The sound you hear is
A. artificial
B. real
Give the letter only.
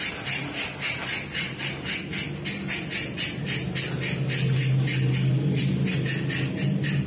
B